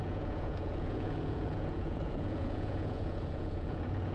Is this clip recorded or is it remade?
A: remade